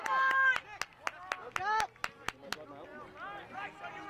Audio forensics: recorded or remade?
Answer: recorded